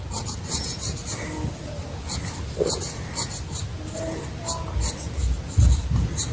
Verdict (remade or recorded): recorded